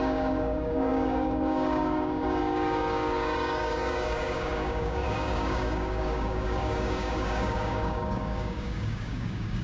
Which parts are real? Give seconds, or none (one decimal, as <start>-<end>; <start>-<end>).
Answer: none